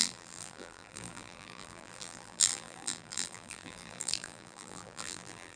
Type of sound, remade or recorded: remade